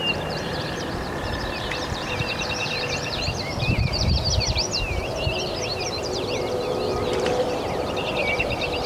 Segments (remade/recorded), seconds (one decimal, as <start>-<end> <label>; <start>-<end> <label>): 0.0-8.9 remade